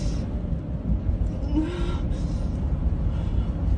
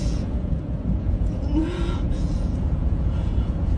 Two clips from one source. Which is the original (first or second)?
first